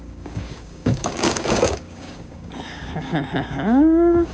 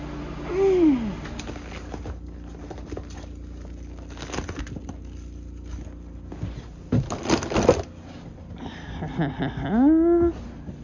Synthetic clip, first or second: first